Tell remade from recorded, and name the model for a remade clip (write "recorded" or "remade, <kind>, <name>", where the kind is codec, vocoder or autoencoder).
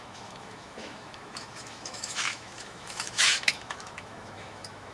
remade, autoencoder, DAC-VAE